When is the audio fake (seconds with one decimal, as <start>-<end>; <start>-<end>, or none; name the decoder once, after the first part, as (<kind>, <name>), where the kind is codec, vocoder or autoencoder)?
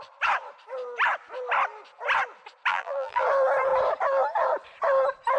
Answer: 2.7-3.2 (vocoder, BigVGAN v2)